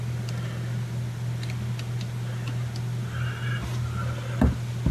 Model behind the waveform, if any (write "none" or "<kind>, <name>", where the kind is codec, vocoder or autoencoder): none